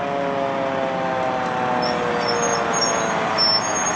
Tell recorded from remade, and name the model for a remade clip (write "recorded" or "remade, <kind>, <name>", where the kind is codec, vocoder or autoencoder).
recorded